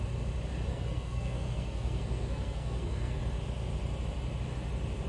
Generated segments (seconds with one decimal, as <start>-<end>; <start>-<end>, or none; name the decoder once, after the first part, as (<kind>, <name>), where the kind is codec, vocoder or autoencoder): 0.7-3.2 (codec, SNAC)